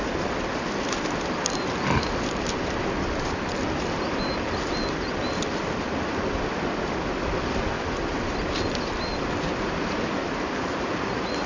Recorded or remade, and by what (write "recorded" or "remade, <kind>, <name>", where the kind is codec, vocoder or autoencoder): recorded